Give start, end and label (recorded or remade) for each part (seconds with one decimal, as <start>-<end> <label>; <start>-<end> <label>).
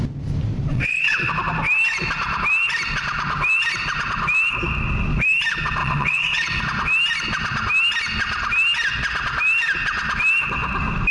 0.0-0.7 recorded; 0.7-1.3 remade; 1.3-5.8 recorded; 5.8-6.6 remade; 6.6-11.1 recorded